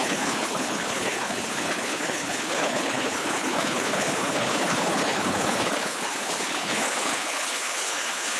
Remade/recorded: remade